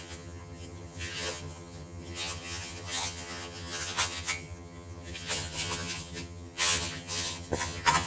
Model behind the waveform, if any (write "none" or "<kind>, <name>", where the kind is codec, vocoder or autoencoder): vocoder, HiFi-GAN